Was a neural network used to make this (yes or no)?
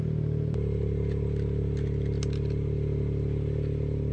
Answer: no